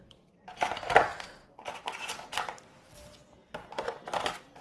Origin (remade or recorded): recorded